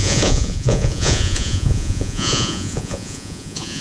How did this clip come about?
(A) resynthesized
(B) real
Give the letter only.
A